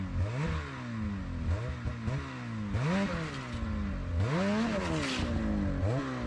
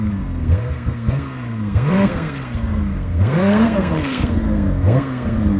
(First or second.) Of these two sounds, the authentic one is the first